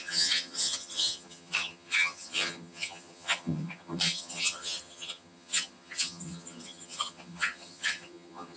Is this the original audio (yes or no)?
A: no